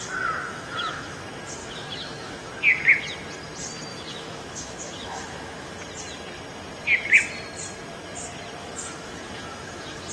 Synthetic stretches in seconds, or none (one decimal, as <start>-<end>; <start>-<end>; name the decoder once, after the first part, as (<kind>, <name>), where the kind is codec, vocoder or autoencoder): 0.4-1.2 (autoencoder, DAC-VAE); 1.6-2.5; 3.9-5.8; 8.6-10.1